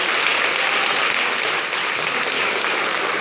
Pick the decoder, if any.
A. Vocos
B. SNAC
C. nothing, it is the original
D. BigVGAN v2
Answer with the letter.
C